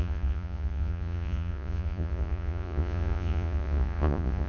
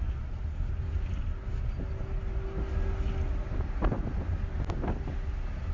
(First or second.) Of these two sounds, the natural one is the second